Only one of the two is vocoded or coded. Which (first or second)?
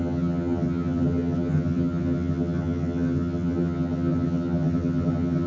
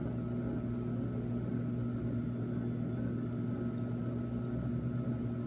first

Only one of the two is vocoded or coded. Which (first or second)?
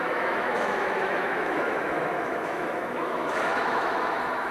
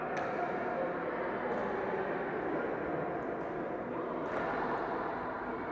first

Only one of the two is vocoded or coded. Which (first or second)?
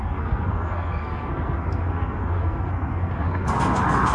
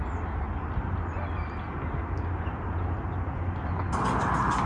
first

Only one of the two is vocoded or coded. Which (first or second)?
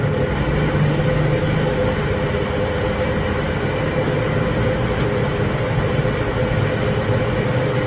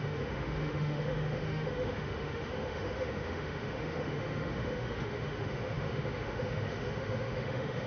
second